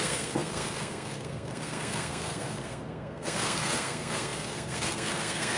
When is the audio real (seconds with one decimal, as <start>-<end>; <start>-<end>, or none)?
none